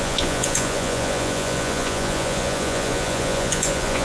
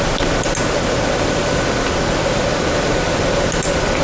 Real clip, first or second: second